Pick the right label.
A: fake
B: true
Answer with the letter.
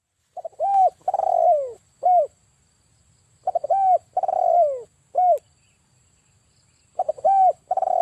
B